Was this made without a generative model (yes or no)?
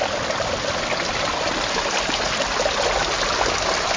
yes